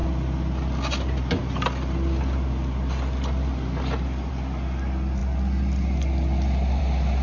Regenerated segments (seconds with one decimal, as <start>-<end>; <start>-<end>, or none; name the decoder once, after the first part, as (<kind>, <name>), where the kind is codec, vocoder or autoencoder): none